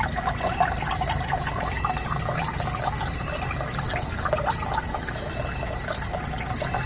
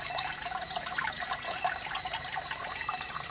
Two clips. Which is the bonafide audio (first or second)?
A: first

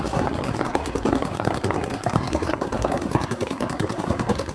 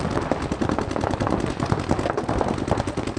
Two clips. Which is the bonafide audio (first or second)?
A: second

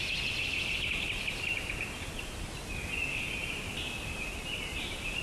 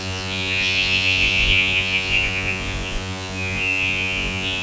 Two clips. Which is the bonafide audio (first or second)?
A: first